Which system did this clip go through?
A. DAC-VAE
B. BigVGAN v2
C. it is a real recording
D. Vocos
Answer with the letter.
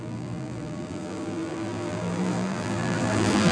B